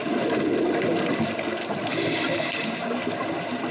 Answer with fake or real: real